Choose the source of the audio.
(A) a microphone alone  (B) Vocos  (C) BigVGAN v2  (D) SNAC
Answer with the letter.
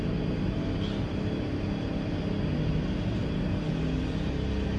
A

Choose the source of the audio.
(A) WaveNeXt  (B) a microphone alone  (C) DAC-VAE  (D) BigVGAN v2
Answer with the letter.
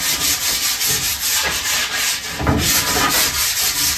B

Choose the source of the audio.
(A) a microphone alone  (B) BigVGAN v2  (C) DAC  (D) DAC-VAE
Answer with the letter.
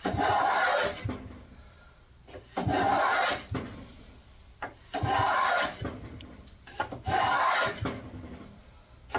B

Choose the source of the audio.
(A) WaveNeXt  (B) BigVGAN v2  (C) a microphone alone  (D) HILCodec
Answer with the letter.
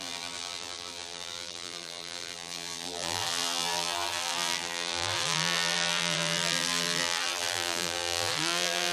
B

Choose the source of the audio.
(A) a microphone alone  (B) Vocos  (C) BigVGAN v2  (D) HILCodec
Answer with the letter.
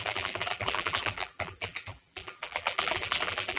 C